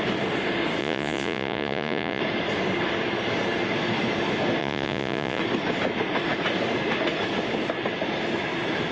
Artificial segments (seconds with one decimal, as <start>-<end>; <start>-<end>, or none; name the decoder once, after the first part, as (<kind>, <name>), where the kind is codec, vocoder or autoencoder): 0.8-2.2 (vocoder, Vocos); 4.6-5.4